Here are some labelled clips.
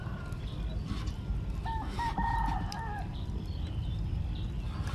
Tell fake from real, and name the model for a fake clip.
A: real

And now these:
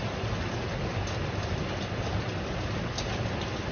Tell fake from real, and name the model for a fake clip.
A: real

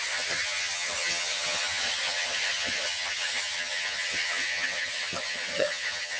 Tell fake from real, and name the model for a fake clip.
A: fake, vocoder, HiFi-GAN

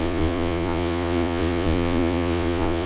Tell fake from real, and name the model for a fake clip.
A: fake, vocoder, Vocos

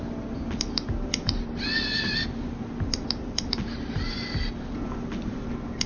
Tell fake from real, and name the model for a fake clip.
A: real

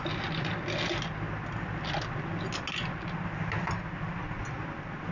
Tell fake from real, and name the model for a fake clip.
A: real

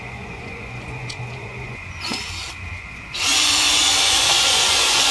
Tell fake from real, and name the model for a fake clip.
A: fake, vocoder, Vocos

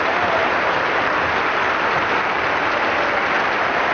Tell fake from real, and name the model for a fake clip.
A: real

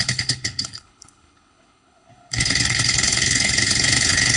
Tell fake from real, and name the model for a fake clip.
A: fake, codec, HILCodec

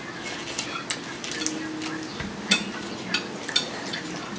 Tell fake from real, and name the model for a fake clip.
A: real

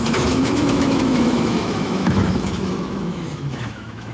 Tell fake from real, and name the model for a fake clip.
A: fake, autoencoder, DAC-VAE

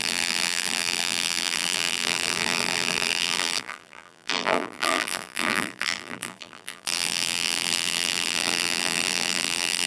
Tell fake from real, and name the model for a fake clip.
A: fake, vocoder, BigVGAN v2